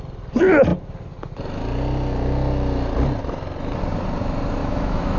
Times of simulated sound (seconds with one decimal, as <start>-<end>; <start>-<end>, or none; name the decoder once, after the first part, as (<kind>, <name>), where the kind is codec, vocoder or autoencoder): 4.6-5.2 (autoencoder, DAC-VAE)